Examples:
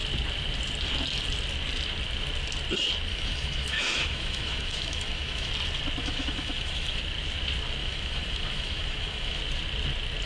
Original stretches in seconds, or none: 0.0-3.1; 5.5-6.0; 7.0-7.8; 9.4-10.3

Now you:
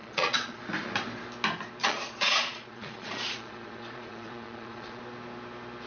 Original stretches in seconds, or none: 0.6-1.8; 5.0-5.9

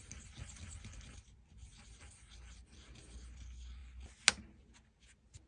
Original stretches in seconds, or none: 0.0-5.5

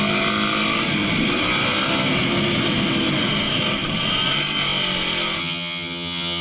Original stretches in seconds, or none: 0.0-5.4

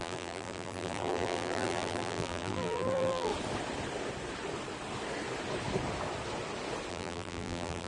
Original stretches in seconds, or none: 3.3-6.9

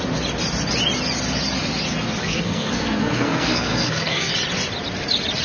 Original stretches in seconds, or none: 0.0-2.2; 4.3-5.4